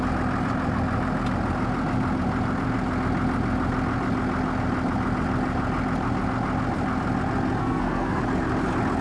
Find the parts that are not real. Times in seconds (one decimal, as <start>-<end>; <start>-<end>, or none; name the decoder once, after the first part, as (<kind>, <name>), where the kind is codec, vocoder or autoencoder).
7.6-8.2 (codec, SNAC)